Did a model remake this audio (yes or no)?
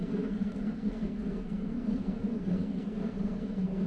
yes